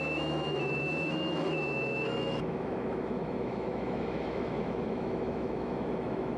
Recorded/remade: remade